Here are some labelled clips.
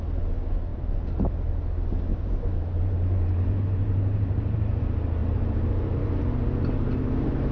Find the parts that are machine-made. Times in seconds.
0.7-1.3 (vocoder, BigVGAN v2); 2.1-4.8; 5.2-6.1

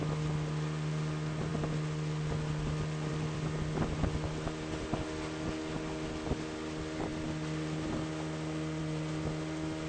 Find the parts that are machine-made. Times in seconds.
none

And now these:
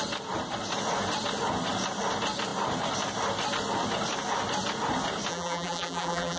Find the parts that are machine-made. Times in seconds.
5.3-6.4 (vocoder, BigVGAN v2)

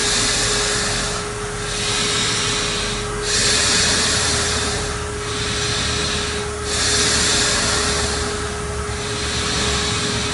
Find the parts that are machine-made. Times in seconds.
3.4-4.9 (vocoder, BigVGAN v2)

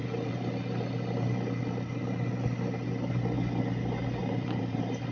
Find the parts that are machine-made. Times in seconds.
4.2-5.1 (vocoder, BigVGAN v2)

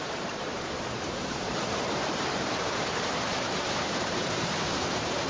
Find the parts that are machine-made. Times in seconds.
0.0-5.3 (vocoder, BigVGAN v2)

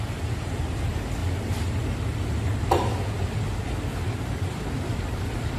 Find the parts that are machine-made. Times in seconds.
0.0-1.2 (vocoder, BigVGAN v2); 4.1-5.6